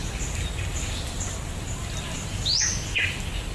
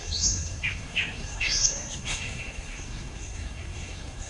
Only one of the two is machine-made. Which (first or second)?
second